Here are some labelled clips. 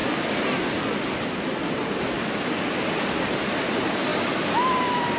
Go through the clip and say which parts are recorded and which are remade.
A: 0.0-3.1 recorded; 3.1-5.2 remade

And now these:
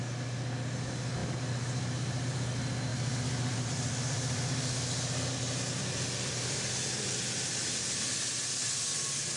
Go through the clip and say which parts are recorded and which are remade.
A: 0.0-1.2 recorded; 1.2-2.5 remade; 2.5-2.9 recorded; 2.9-7.1 remade; 7.1-9.4 recorded